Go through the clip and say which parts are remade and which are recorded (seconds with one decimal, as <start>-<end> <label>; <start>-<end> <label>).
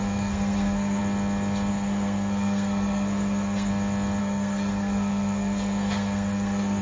0.0-1.0 remade; 1.0-1.7 recorded; 1.7-3.7 remade; 3.7-4.2 recorded; 4.2-6.8 remade